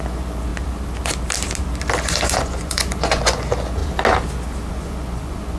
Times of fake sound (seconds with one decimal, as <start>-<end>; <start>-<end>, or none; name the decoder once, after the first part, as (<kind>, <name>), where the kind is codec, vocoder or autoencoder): 0.0-0.5 (vocoder, Vocos); 2.0-3.8; 4.7-5.6